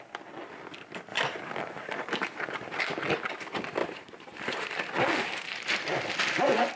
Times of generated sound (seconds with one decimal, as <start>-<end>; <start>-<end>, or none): 1.1-2.8; 3.8-6.8